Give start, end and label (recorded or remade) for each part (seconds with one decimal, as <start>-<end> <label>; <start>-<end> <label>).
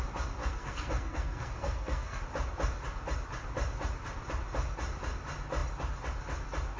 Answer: 0.0-0.4 recorded; 0.4-2.2 remade; 2.2-6.8 recorded